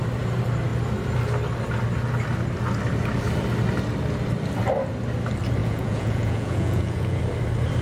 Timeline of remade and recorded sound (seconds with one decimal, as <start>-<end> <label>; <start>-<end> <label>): 0.0-5.6 recorded; 5.6-7.2 remade; 7.2-7.8 recorded